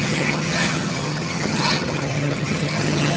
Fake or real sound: fake